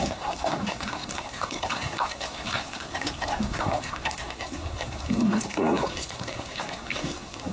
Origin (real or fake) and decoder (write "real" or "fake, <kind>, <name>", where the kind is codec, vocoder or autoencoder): fake, codec, SNAC